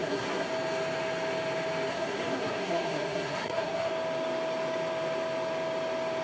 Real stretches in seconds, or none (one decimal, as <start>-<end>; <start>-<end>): 0.5-1.9; 3.9-6.2